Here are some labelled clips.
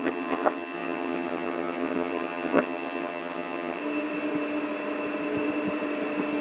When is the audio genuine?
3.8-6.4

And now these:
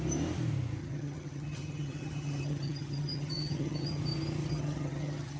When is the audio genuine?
0.0-0.8; 4.0-4.4

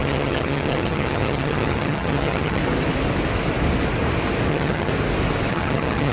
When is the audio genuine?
2.6-4.5; 4.9-5.5

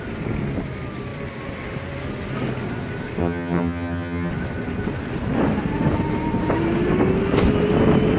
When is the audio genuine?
0.0-3.2; 4.3-8.2

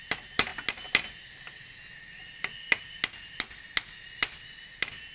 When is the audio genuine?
0.0-5.1